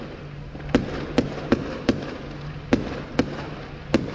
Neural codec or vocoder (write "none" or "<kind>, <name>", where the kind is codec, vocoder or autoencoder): none